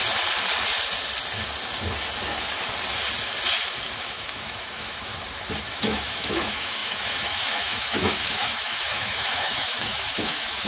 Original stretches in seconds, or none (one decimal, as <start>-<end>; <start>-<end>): 0.0-4.0; 5.1-5.6